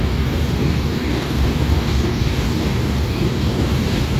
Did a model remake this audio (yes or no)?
yes